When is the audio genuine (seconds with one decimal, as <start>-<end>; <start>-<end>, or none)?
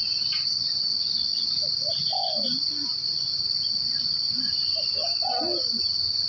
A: 0.0-6.3